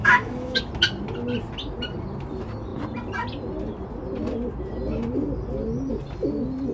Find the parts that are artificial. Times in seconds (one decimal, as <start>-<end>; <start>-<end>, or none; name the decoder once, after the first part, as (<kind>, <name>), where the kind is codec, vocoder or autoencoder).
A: 0.0-0.6 (autoencoder, DAC-VAE)